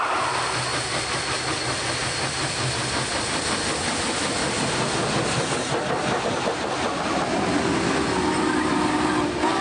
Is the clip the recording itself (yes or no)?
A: yes